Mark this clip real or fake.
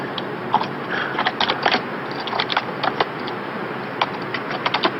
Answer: real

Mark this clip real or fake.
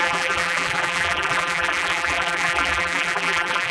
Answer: fake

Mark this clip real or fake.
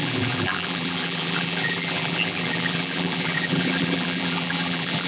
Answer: fake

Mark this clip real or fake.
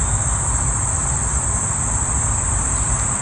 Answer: fake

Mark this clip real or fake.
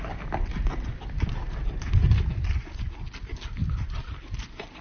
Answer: real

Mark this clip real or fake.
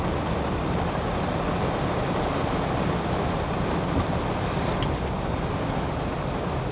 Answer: fake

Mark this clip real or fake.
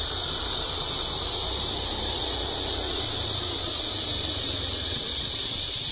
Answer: fake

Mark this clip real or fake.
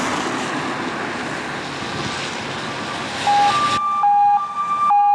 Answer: real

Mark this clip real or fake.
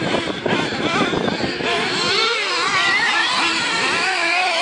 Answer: fake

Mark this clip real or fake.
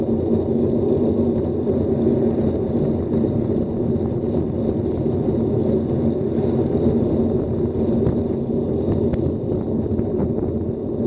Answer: real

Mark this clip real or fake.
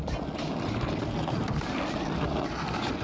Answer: real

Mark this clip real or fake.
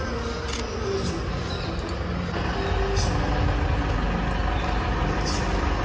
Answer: real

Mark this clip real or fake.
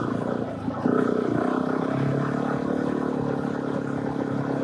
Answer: real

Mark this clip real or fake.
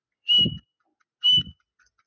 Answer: real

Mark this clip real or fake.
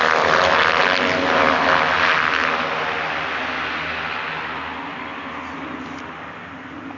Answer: real